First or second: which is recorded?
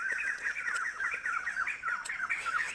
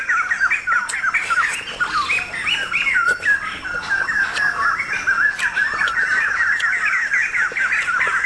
second